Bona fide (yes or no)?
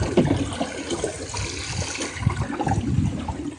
yes